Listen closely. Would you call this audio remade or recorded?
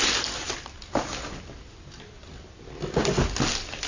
recorded